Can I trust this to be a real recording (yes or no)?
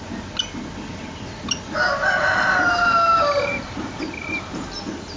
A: yes